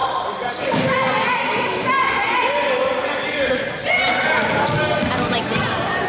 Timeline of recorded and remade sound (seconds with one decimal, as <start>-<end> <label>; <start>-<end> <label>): 0.0-1.1 remade; 1.1-3.8 recorded; 3.8-4.5 remade; 4.5-6.1 recorded